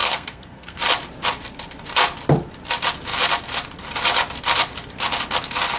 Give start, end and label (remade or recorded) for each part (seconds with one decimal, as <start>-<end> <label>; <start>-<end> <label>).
0.0-0.8 remade; 0.8-5.8 recorded